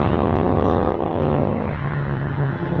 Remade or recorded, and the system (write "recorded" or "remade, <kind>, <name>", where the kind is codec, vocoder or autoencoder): remade, vocoder, HiFi-GAN